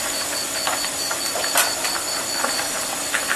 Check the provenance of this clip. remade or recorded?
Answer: remade